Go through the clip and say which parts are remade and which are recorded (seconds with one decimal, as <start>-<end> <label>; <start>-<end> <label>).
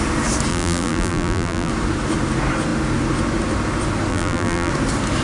0.0-0.5 recorded; 0.5-1.7 remade; 1.7-4.1 recorded; 4.1-4.7 remade; 4.7-5.2 recorded